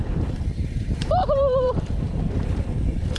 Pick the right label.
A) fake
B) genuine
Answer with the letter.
A